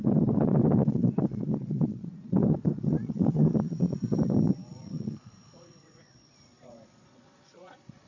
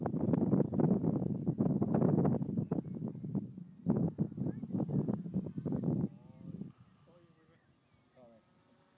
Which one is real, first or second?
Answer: second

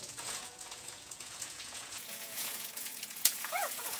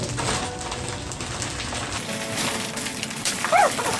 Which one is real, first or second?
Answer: second